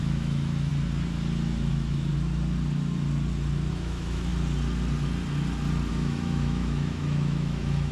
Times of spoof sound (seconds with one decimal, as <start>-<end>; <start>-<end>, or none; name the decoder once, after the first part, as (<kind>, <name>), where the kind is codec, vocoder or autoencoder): 0.0-0.7 (autoencoder, DAC-VAE); 1.7-2.1; 3.7-4.3; 5.9-7.9